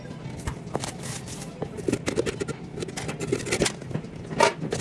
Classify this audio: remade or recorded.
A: recorded